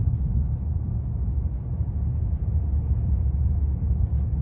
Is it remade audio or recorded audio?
recorded